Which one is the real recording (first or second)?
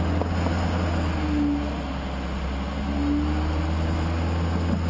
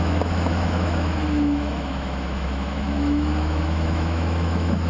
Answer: first